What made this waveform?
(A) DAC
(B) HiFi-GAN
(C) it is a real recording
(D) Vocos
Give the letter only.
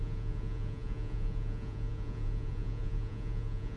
D